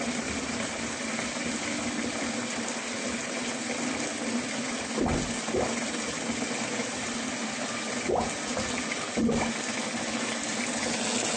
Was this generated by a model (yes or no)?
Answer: no